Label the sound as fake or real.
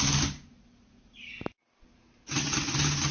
real